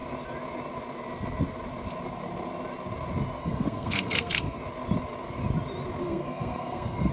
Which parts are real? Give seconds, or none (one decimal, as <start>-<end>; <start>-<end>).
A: 0.0-3.4; 4.6-6.0